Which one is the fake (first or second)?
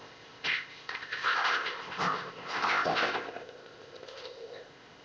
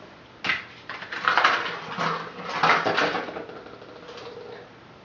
first